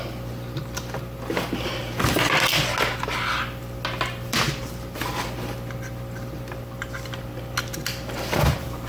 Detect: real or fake real